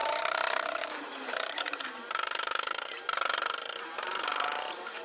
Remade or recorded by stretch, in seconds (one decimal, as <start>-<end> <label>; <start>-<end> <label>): 0.0-3.0 remade; 3.0-5.0 recorded